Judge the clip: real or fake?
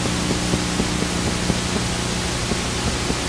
real